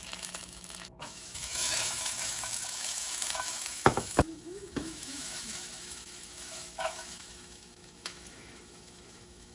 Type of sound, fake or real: fake